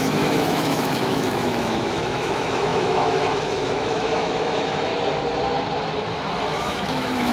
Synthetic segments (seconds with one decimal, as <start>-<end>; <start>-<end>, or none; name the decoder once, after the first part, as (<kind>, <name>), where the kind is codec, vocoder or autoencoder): 0.0-4.9 (autoencoder, DAC-VAE); 6.6-7.3